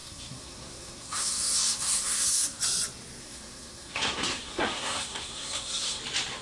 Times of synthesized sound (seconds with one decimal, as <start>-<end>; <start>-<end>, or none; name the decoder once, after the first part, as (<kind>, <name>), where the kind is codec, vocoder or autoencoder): 0.0-2.6 (codec, SNAC); 3.2-6.0